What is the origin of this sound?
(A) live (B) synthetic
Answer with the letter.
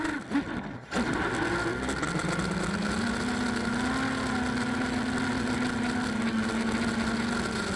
A